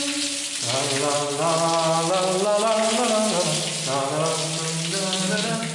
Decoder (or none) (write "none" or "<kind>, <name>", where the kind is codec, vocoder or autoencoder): none